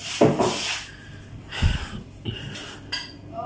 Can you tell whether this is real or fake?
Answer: real